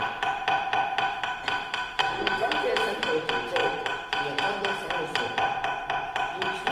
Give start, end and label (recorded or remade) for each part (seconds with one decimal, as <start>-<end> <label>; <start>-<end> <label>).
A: 0.0-2.0 recorded; 2.0-2.5 remade; 2.5-6.7 recorded